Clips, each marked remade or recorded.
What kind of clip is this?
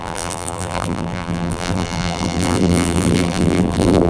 remade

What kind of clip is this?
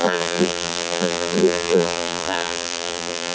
remade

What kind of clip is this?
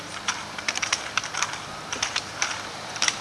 remade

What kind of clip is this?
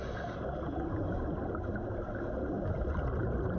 recorded